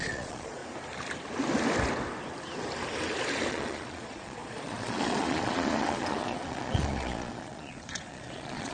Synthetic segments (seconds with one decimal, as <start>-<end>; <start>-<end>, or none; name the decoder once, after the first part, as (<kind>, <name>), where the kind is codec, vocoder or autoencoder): 0.0-0.6 (vocoder, Vocos); 3.5-8.7